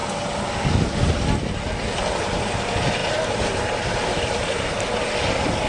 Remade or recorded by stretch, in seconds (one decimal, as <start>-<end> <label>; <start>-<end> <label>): 0.0-3.0 recorded; 3.0-4.9 remade; 4.9-5.7 recorded